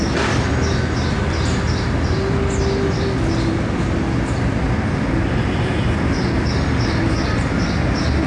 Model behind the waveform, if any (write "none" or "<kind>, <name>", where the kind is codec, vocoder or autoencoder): none